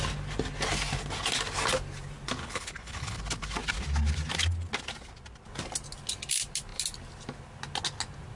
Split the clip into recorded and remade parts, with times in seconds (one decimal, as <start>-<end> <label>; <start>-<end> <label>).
0.0-2.4 recorded; 2.4-3.2 remade; 3.2-8.4 recorded

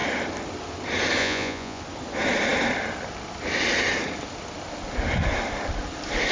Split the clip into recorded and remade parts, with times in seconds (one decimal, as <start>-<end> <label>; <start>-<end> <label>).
0.0-1.2 recorded; 1.2-1.8 remade; 1.8-6.3 recorded

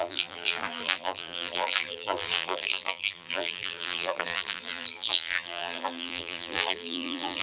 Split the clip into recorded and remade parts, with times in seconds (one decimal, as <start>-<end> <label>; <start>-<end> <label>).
0.0-7.4 remade

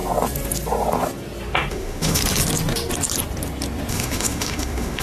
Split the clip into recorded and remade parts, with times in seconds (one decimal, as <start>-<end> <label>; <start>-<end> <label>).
0.0-1.7 recorded; 1.7-2.2 remade; 2.2-3.9 recorded; 3.9-5.0 remade

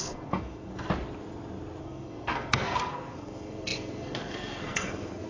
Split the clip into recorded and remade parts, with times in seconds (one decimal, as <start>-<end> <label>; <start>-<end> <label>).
0.0-0.7 remade; 0.7-1.8 recorded; 1.8-5.3 remade

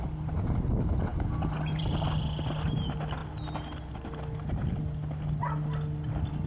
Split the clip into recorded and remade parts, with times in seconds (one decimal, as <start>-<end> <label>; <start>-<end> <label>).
0.0-3.2 remade; 3.2-3.9 recorded; 3.9-6.5 remade

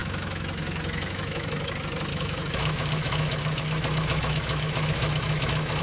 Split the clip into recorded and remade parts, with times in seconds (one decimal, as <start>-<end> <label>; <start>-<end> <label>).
0.0-1.7 remade; 1.7-2.1 recorded; 2.1-5.8 remade

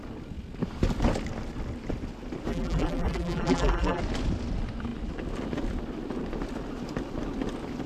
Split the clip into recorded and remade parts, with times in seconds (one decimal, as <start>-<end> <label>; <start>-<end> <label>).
0.0-2.5 recorded; 2.5-4.0 remade; 4.0-7.9 recorded